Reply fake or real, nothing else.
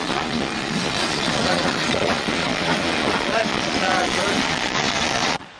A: fake